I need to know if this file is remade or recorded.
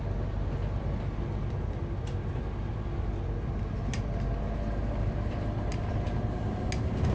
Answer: recorded